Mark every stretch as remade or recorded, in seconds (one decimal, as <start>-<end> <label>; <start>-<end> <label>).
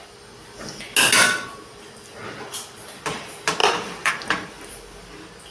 0.0-3.6 recorded; 3.6-4.1 remade; 4.1-5.5 recorded